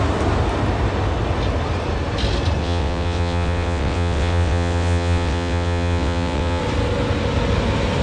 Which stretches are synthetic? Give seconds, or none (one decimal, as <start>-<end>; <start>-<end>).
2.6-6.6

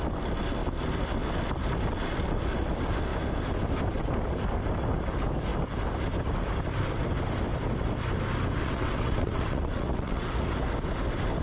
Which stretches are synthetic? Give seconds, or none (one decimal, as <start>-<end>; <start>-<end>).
8.6-10.2

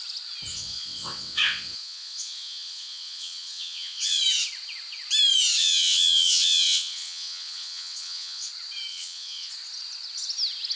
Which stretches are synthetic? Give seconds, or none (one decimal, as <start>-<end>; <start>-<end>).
0.5-4.2; 5.6-8.5; 8.9-9.5

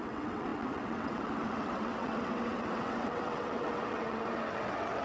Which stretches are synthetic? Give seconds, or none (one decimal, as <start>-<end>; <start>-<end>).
0.0-5.0